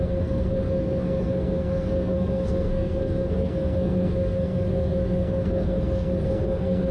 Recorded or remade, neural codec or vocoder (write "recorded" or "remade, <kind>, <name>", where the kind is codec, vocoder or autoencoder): remade, codec, SNAC